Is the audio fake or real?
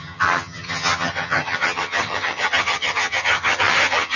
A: fake